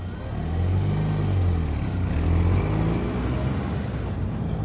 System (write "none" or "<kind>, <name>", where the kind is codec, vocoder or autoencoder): none